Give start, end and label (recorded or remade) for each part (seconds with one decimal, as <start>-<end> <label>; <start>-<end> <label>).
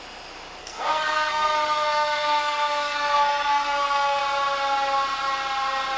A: 0.0-0.6 recorded; 0.6-4.2 remade; 4.2-6.0 recorded